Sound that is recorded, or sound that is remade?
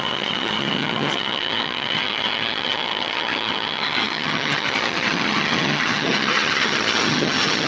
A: remade